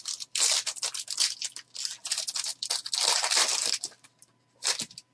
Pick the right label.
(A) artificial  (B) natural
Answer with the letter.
B